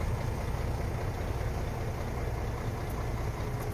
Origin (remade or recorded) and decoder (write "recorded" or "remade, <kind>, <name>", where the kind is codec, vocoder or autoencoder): recorded